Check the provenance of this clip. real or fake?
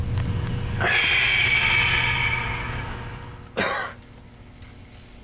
real